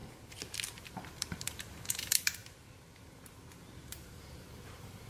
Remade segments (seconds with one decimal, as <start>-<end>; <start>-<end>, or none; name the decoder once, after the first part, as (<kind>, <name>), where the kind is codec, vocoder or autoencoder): 0.8-2.4 (vocoder, BigVGAN v2); 3.9-5.1